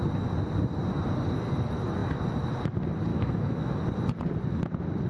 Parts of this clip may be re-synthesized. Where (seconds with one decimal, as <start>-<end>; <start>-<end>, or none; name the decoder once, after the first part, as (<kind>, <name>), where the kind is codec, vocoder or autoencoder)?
3.1-3.7 (autoencoder, DAC-VAE)